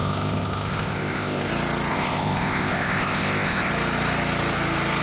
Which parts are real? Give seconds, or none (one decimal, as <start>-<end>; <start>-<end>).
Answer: 1.5-1.9; 3.7-5.0